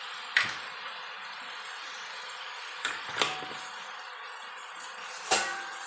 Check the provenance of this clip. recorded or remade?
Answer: recorded